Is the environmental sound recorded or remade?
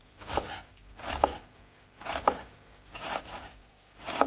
recorded